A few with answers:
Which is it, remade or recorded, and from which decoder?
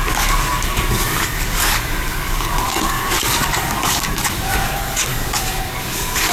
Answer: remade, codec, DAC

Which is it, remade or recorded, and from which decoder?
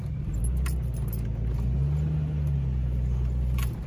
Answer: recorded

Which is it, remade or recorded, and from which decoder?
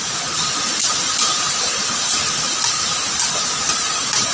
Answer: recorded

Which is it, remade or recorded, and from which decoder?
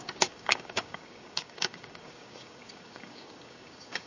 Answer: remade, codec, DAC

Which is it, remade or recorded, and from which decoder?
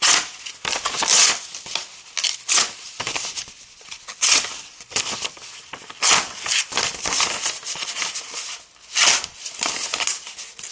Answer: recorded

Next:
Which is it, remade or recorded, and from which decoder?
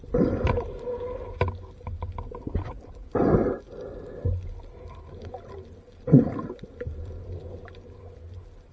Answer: recorded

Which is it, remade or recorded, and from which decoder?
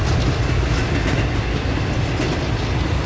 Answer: recorded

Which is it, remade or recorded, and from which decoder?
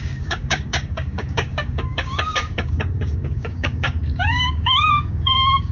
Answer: remade, codec, DAC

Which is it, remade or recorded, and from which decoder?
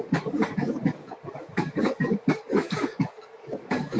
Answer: remade, codec, DAC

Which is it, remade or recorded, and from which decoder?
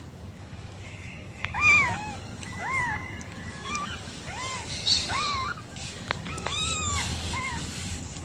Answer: remade, codec, DAC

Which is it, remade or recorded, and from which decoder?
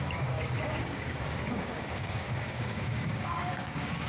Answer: remade, codec, DAC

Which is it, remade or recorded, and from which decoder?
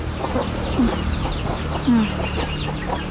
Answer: recorded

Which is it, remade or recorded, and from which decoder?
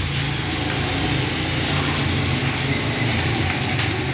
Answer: recorded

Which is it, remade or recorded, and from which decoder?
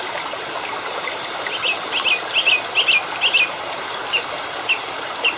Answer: recorded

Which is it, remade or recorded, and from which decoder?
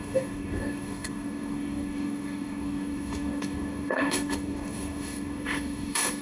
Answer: remade, codec, DAC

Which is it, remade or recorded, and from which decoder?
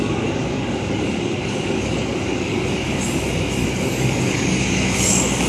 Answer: remade, codec, DAC